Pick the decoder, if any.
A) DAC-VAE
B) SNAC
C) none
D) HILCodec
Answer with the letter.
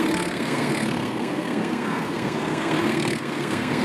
B